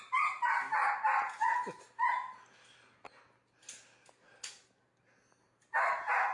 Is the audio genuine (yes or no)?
yes